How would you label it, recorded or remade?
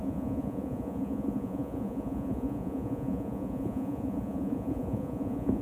remade